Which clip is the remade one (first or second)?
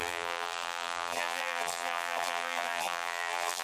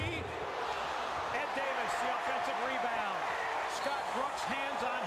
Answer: first